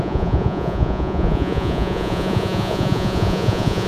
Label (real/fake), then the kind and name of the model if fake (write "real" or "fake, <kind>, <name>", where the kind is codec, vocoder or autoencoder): fake, vocoder, Vocos